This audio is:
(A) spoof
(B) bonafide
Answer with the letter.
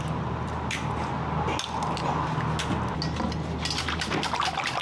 B